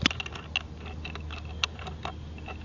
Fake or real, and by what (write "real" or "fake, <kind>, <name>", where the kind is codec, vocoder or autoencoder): real